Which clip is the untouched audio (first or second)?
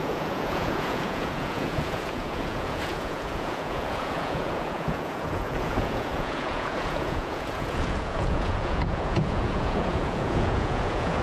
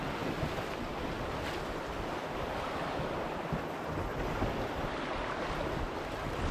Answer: second